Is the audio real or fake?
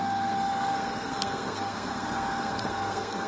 fake